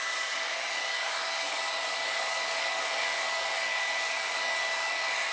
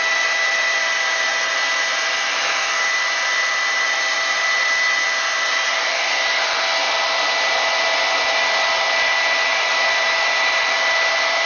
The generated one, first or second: first